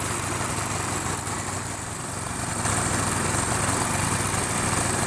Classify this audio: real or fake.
real